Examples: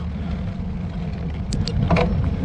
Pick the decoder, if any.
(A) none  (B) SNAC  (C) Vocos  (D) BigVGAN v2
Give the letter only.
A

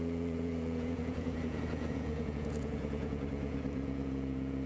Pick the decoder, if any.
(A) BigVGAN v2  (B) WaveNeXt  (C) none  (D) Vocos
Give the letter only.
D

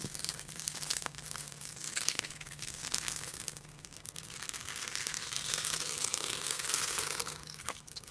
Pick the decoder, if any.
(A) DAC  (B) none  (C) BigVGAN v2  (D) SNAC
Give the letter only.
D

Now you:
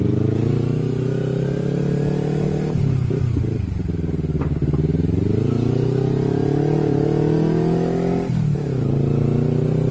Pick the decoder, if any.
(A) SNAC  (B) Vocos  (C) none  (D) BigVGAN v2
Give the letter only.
C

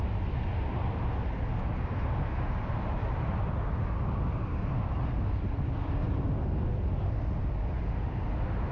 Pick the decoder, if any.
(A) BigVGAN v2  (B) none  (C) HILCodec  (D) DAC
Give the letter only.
B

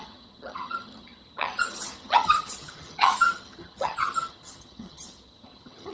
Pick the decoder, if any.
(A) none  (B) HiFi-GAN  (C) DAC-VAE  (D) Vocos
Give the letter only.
B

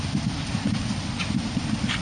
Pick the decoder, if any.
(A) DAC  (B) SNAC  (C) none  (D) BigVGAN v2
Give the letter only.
C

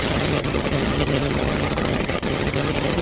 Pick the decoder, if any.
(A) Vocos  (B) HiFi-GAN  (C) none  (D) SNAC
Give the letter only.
B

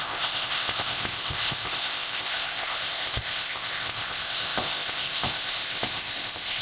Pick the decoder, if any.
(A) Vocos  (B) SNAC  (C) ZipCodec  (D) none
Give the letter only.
C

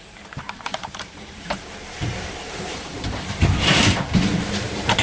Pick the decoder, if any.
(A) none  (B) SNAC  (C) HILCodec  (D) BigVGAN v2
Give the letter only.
D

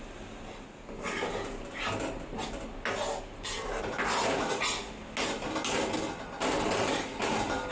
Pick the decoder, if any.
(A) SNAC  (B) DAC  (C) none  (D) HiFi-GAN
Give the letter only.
C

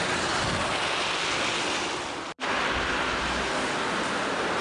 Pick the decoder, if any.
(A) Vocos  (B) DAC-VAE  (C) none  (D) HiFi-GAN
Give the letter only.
C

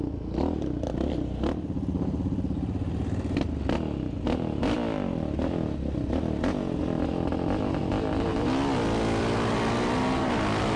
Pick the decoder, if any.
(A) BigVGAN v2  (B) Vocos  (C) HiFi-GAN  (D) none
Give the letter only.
D